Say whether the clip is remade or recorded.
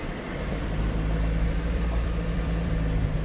remade